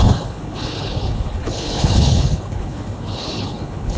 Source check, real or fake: fake